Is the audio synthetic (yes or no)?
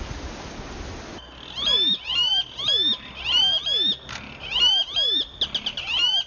no